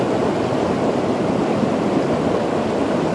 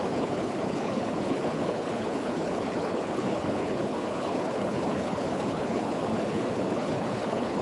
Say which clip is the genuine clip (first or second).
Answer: first